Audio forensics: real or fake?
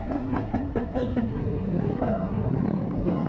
fake